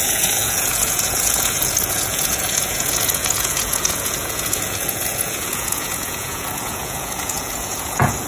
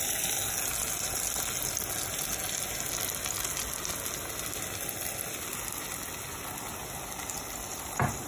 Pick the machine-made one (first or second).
first